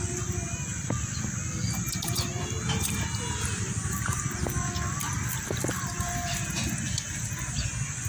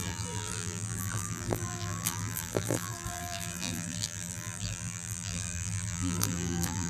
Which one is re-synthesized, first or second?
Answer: second